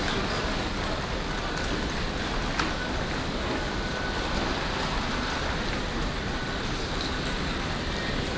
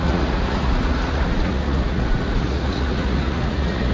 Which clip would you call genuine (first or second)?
first